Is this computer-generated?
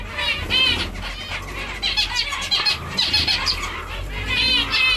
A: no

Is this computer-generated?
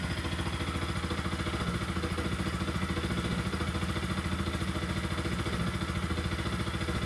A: no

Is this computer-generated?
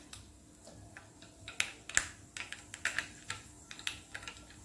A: no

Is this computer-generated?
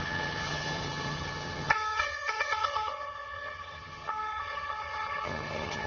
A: yes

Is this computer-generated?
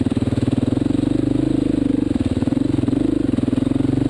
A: yes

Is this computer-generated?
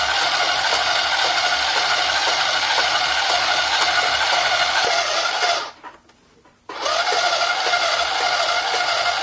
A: no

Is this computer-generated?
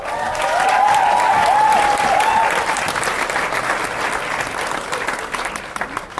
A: no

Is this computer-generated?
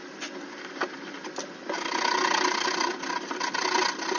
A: no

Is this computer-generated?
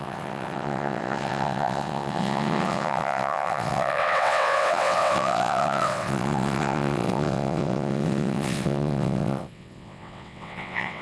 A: yes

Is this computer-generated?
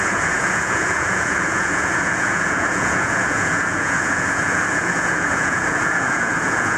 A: yes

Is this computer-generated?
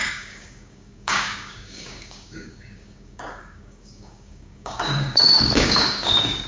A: yes